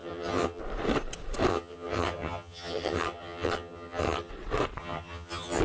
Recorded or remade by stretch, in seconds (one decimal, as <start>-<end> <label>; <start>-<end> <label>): 0.0-0.6 remade; 0.6-1.5 recorded; 1.5-4.3 remade; 4.3-4.8 recorded; 4.8-5.6 remade